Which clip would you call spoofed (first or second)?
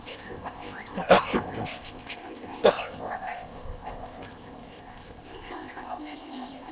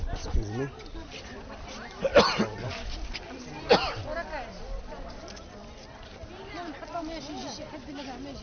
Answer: first